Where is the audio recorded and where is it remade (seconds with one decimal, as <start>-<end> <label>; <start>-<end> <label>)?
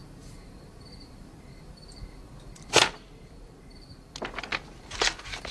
0.0-4.5 recorded; 4.5-5.0 remade; 5.0-5.5 recorded